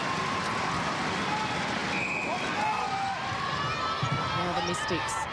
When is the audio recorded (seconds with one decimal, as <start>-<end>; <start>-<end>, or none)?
0.0-5.3